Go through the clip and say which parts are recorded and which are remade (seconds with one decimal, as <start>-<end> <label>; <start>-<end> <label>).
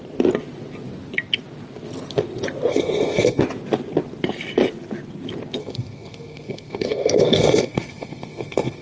0.0-2.7 recorded; 2.7-3.4 remade; 3.4-5.6 recorded; 5.6-8.8 remade